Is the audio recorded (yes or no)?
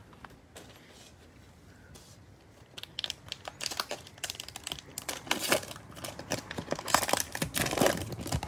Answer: yes